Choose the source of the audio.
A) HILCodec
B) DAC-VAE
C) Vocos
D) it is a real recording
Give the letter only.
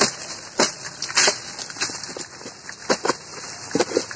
D